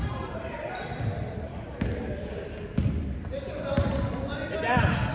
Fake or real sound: fake